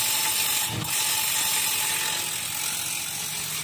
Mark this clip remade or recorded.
recorded